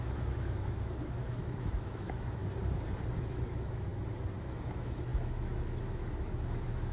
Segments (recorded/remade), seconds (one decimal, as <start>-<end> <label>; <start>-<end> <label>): 0.0-2.4 remade; 2.4-3.3 recorded; 3.3-3.9 remade; 3.9-4.4 recorded; 4.4-6.9 remade

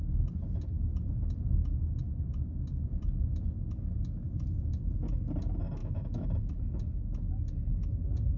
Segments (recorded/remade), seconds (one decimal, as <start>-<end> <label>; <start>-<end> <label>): 0.0-5.8 recorded; 5.8-6.7 remade; 6.7-8.4 recorded

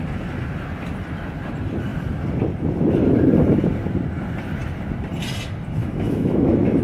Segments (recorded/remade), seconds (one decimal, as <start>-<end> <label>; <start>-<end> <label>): 0.0-5.8 recorded; 5.8-6.8 remade

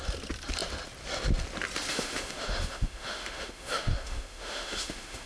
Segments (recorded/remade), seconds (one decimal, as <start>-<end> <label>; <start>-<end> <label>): 0.0-1.9 recorded; 1.9-5.3 remade

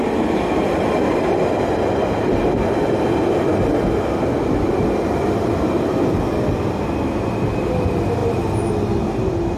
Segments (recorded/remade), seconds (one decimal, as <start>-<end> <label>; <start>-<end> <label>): 0.0-9.6 recorded

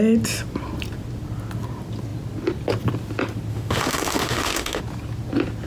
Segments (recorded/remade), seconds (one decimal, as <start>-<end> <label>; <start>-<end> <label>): 0.0-3.5 recorded; 3.5-4.8 remade; 4.8-5.7 recorded

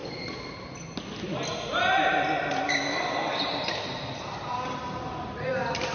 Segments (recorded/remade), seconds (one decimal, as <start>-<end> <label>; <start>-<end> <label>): 0.0-5.9 recorded

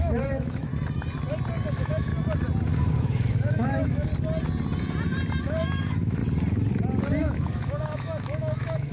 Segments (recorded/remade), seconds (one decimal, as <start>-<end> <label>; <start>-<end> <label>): 0.0-0.7 remade; 0.7-1.7 recorded; 1.7-2.1 remade; 2.1-2.9 recorded; 2.9-4.1 remade; 4.1-5.4 recorded; 5.4-6.2 remade; 6.2-7.2 recorded; 7.2-8.9 remade